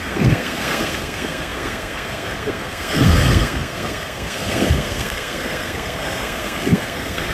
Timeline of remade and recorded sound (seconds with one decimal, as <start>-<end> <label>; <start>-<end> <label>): 0.0-7.3 remade